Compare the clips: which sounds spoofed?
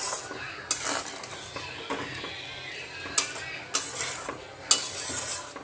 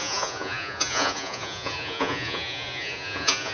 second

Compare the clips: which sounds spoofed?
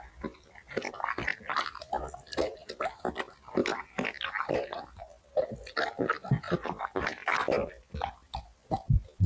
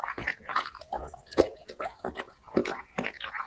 second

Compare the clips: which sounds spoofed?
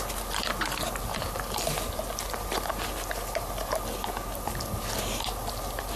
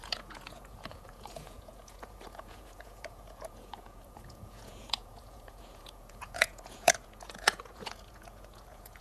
second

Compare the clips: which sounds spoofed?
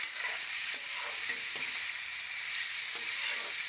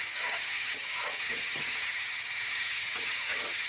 second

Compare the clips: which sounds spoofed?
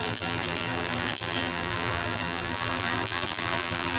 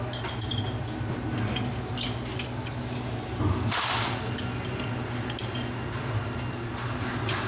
first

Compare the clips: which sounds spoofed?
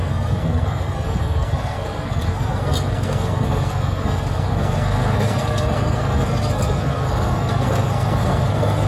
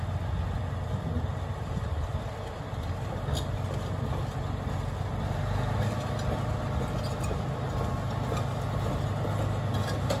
first